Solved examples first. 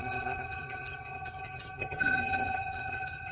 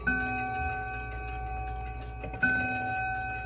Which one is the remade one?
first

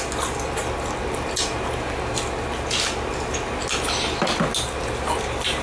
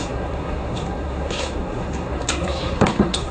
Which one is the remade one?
second